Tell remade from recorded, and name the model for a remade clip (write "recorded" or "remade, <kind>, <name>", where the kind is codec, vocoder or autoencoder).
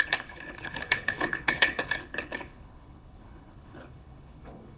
remade, codec, HILCodec